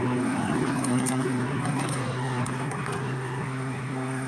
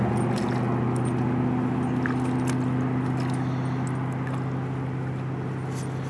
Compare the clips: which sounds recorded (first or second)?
second